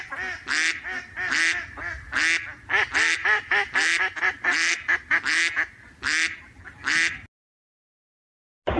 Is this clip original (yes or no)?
yes